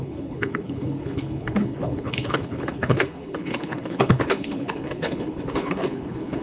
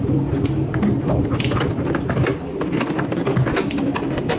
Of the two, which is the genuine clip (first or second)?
second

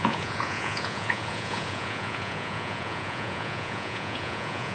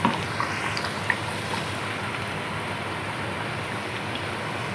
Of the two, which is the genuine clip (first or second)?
second